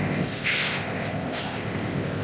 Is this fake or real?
fake